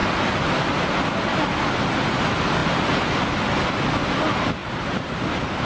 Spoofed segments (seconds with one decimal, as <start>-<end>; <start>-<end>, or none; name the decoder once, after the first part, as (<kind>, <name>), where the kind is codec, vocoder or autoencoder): none